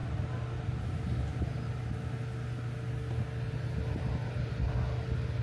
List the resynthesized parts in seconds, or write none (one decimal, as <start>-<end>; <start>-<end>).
none